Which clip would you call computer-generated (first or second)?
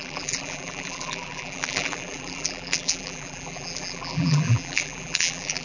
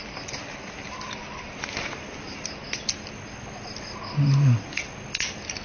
first